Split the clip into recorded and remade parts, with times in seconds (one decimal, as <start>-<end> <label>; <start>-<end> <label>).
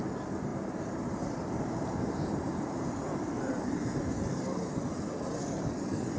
0.0-0.5 recorded; 0.5-4.2 remade; 4.2-6.2 recorded